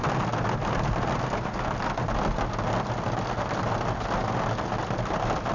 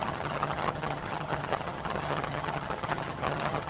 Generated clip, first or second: second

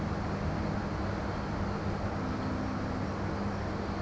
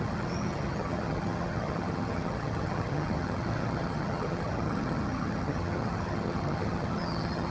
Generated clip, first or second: second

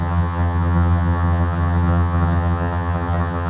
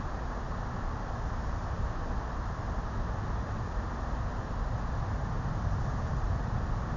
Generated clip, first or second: first